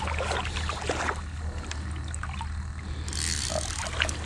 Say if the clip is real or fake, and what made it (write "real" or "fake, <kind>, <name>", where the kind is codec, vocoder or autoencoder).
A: real